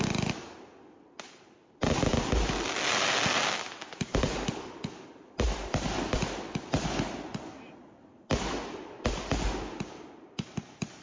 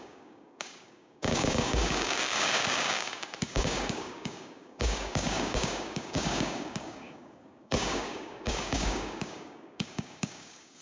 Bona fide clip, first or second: first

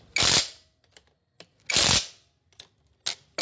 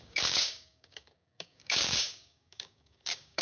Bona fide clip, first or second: first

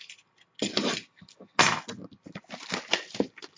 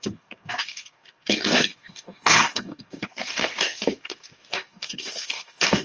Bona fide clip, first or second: first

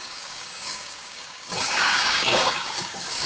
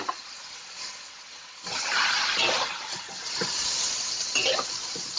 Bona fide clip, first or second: second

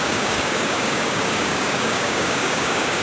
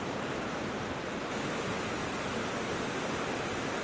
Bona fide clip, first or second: second